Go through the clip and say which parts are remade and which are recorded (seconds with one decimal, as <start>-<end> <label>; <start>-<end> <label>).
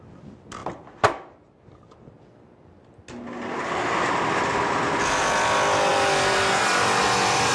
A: 0.0-7.5 recorded